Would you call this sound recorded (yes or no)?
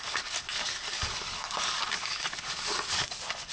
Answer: no